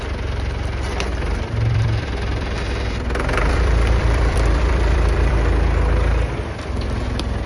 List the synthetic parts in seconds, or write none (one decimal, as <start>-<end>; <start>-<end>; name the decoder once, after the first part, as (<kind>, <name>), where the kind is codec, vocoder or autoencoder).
1.1-5.3 (vocoder, BigVGAN v2)